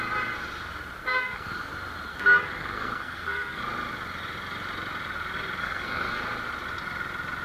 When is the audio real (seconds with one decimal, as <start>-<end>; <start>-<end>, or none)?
0.0-1.0; 1.7-2.1; 3.6-5.6; 6.2-7.4